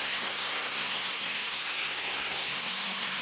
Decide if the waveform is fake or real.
fake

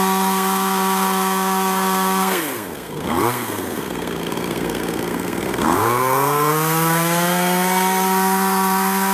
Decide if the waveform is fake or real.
fake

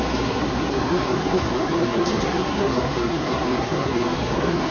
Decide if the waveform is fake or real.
fake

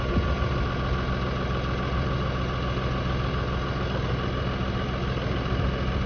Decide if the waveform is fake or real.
real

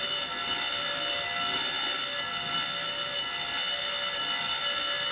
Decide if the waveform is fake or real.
real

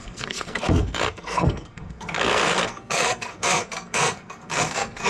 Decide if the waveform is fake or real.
fake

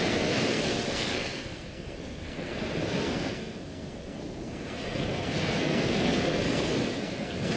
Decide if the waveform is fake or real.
fake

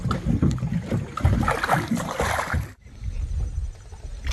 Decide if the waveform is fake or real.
real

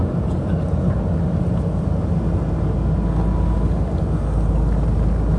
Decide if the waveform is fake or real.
real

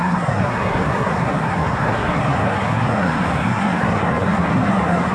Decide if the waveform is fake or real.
fake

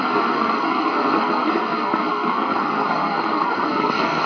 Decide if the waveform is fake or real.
fake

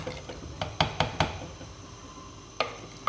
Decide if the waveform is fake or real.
real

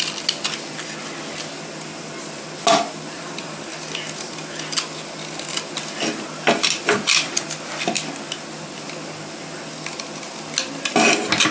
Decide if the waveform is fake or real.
real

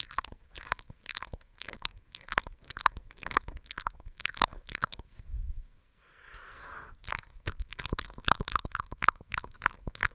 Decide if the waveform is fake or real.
fake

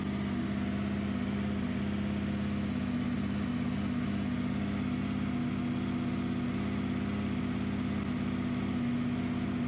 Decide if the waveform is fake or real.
real